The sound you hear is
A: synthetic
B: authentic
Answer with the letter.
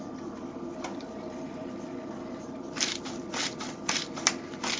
A